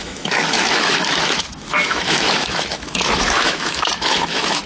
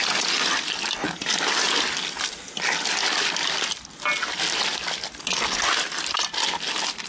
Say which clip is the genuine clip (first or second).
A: second